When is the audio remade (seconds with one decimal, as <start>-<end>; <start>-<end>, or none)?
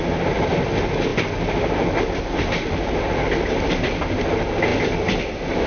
none